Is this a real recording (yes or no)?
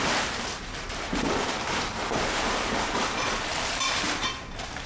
no